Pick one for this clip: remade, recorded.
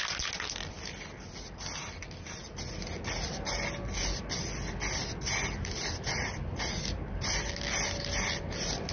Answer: recorded